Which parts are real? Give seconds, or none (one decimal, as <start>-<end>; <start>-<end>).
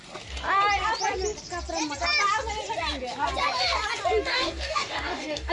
0.0-4.3